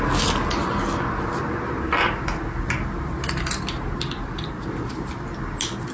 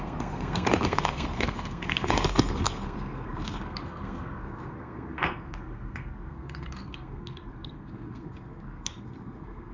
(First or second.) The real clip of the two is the first